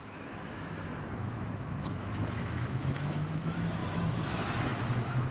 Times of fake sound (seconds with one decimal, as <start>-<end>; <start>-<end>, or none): 0.0-5.3

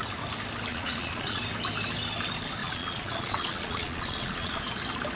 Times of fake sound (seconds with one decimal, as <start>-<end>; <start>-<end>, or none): 0.7-1.4; 2.6-4.6

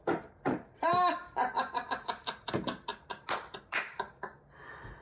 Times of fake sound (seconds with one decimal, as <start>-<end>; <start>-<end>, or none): 0.0-5.0

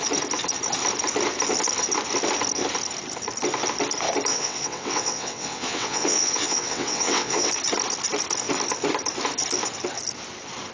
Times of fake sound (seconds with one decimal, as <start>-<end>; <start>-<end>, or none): 4.3-7.5